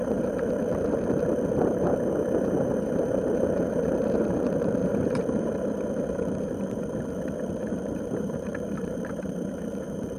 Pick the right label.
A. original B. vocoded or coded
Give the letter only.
B